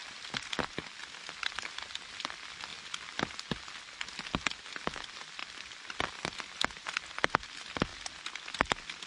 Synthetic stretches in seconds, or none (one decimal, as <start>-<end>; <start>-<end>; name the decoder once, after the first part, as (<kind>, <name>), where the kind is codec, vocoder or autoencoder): none